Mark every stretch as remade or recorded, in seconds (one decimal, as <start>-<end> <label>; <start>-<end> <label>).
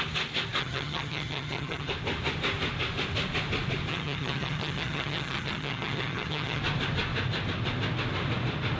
0.0-0.6 recorded; 0.6-1.9 remade; 1.9-3.9 recorded; 3.9-6.6 remade; 6.6-8.8 recorded